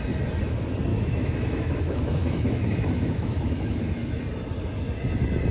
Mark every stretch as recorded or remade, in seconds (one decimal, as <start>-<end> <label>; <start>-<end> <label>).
0.0-0.9 recorded; 0.9-4.2 remade; 4.2-5.5 recorded